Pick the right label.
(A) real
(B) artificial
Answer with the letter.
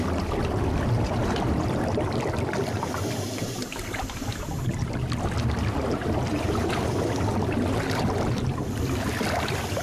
A